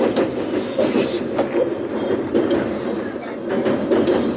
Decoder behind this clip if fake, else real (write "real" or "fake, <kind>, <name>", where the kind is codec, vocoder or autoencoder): real